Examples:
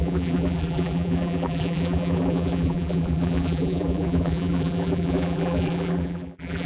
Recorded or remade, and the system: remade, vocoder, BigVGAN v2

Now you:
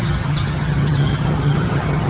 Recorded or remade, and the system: remade, vocoder, HiFi-GAN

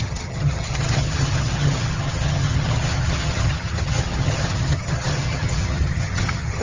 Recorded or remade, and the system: remade, vocoder, HiFi-GAN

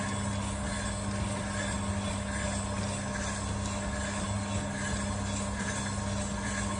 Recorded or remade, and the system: recorded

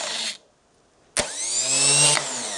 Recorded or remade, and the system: recorded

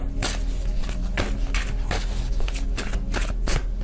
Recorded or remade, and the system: recorded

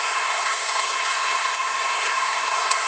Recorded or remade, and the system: remade, codec, SNAC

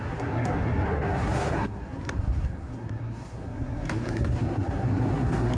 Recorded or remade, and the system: remade, codec, SNAC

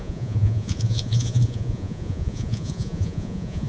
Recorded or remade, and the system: remade, vocoder, Vocos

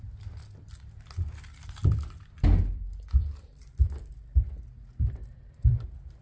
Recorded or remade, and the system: recorded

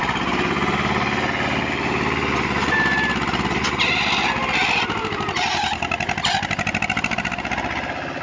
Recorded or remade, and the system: recorded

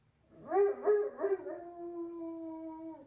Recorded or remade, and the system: recorded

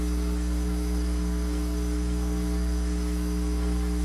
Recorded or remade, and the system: remade, codec, SNAC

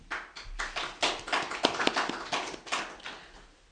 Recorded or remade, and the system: recorded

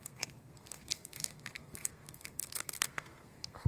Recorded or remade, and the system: remade, codec, SNAC